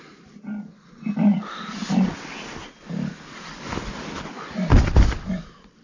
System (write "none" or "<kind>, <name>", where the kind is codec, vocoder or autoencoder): none